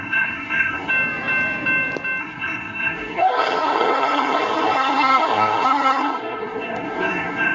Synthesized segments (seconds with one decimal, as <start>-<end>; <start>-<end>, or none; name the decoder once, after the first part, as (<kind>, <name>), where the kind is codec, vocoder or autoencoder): 0.0-0.9 (codec, SNAC); 2.2-7.5